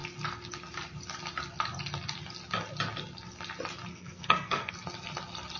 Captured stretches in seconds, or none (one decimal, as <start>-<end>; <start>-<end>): 0.0-3.9; 4.7-5.6

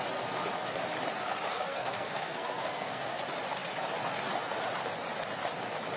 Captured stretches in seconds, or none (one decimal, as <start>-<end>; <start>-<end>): 0.0-1.5; 3.2-6.0

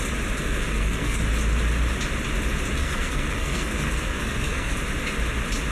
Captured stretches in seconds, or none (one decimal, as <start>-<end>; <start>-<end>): 0.0-0.4; 1.2-2.8; 4.7-5.7

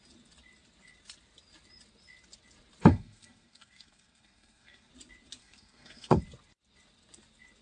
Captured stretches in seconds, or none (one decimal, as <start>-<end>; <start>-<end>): 0.0-2.9; 4.9-5.4; 6.2-7.6

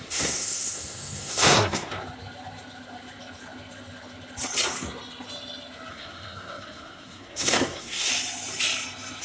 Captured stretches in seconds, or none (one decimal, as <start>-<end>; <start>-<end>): 1.9-5.9; 8.1-9.2

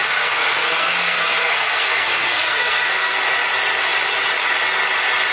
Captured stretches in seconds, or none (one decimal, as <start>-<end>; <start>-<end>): 3.2-5.3

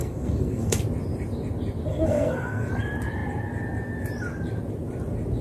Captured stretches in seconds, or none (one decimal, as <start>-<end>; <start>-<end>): 0.8-1.9; 2.7-5.4